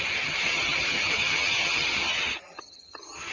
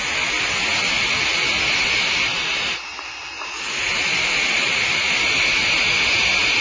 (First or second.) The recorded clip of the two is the second